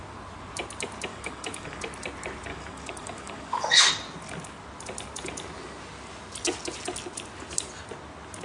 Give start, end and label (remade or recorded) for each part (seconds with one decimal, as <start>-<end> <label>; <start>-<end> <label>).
0.0-1.1 recorded; 1.1-1.8 remade; 1.8-2.5 recorded; 2.5-3.9 remade; 3.9-8.4 recorded

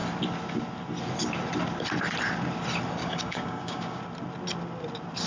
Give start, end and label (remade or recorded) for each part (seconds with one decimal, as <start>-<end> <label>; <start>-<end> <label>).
0.0-3.0 recorded; 3.0-4.0 remade; 4.0-5.3 recorded